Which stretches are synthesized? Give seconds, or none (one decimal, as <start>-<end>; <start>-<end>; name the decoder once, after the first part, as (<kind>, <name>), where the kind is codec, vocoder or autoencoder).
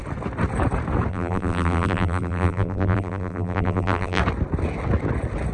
1.1-4.2 (vocoder, BigVGAN v2)